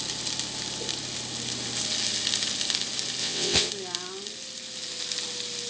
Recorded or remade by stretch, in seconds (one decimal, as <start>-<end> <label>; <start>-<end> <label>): 0.0-3.2 recorded; 3.2-3.7 remade; 3.7-5.7 recorded